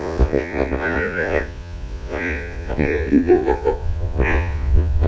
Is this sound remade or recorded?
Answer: remade